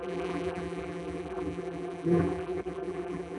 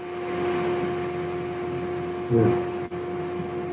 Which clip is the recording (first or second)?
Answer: second